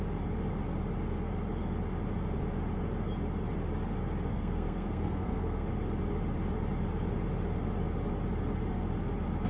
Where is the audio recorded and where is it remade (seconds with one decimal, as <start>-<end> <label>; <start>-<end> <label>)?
0.0-4.3 recorded; 4.3-5.7 remade; 5.7-9.5 recorded

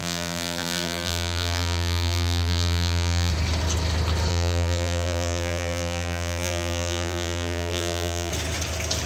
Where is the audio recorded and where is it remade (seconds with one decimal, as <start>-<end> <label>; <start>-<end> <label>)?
0.0-3.3 remade; 3.3-4.3 recorded; 4.3-8.3 remade; 8.3-9.1 recorded

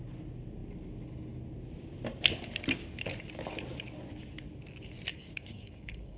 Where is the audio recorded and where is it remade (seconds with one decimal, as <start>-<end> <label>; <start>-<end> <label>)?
0.0-5.1 recorded; 5.1-6.2 remade

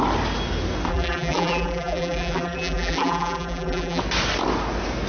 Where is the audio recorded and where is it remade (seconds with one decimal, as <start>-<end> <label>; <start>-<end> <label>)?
0.0-0.9 recorded; 0.9-4.0 remade; 4.0-5.1 recorded

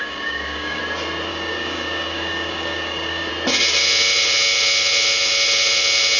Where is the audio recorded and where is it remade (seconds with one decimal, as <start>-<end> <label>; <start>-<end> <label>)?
0.0-0.8 remade; 0.8-1.3 recorded; 1.3-3.3 remade; 3.3-6.2 recorded

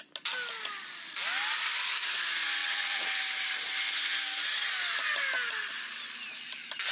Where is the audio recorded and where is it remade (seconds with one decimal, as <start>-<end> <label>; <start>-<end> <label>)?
0.0-2.6 recorded; 2.6-3.2 remade; 3.2-6.9 recorded

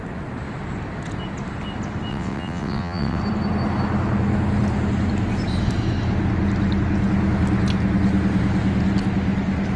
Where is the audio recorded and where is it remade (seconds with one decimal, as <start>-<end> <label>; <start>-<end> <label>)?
0.0-2.1 recorded; 2.1-3.2 remade; 3.2-9.8 recorded